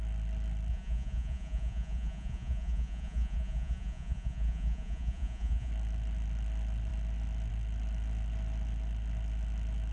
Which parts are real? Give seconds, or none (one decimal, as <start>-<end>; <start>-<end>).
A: 0.0-0.7; 5.7-9.9